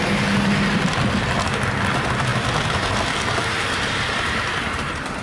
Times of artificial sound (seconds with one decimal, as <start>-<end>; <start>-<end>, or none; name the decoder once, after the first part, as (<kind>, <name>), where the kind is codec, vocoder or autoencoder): 3.4-5.2 (vocoder, BigVGAN v2)